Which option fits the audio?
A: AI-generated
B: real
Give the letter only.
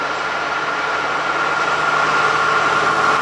B